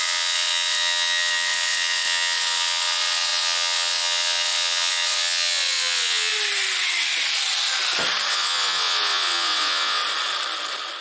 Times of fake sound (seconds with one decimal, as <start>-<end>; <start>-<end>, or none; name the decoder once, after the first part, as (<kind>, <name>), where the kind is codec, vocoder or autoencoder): 0.0-6.3 (vocoder, WaveNeXt); 8.3-10.0